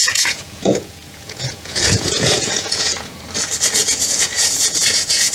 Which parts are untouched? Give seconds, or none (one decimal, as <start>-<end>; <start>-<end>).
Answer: 3.2-3.8